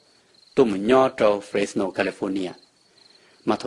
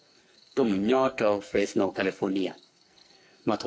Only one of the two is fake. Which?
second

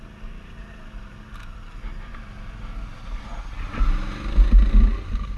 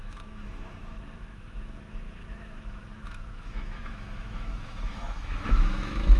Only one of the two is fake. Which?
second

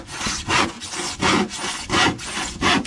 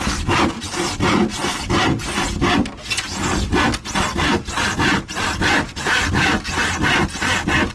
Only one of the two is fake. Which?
first